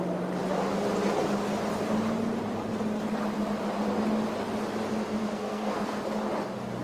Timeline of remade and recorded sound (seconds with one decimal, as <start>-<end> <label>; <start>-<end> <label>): 0.0-5.2 recorded; 5.2-6.0 remade; 6.0-6.8 recorded